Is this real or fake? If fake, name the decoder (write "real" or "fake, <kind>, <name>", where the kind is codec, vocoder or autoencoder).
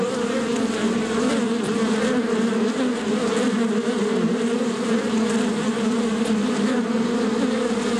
real